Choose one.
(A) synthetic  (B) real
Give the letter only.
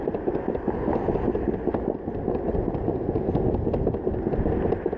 B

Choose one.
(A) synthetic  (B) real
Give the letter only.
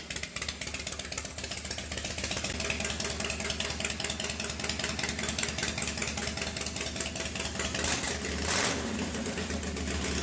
B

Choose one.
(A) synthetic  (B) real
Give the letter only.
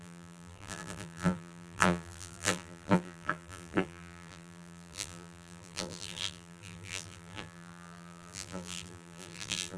A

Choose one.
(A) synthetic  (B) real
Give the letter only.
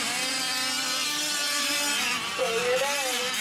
B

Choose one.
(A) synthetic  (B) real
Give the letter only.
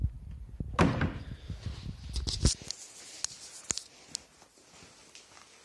B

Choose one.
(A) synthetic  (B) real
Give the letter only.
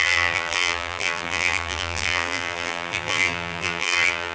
A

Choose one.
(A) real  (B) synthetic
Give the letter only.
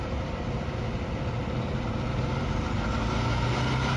A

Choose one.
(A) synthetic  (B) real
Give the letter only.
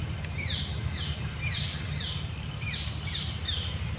B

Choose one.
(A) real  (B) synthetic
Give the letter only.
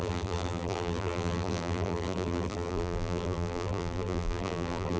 B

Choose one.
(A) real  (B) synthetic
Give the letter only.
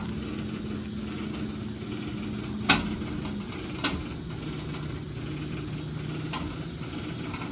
A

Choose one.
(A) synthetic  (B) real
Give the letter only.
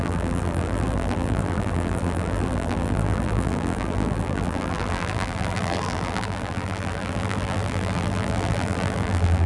A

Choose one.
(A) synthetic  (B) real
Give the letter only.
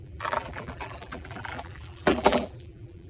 A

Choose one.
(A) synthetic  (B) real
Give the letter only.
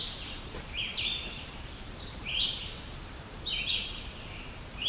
A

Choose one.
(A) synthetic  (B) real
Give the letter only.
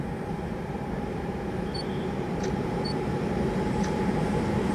A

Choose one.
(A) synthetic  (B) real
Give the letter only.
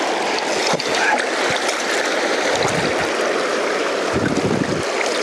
B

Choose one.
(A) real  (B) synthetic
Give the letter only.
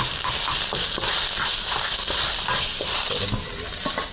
B